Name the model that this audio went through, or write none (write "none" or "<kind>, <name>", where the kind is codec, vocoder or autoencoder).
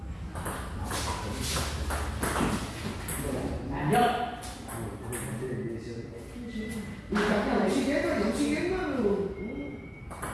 none